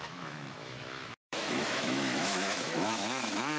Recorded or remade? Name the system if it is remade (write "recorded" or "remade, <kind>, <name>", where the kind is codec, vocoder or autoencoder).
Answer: remade, autoencoder, DAC-VAE